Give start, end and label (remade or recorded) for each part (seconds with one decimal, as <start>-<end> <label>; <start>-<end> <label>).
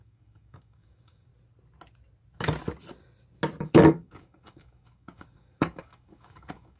0.0-1.3 remade; 1.3-3.6 recorded; 3.6-6.8 remade